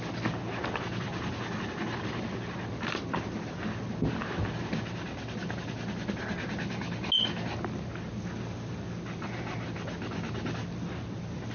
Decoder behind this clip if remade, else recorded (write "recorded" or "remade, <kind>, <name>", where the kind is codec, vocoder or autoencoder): recorded